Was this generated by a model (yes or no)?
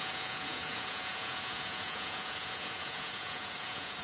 yes